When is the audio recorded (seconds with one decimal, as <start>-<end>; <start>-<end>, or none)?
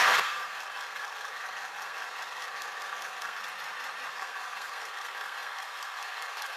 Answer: 3.4-4.1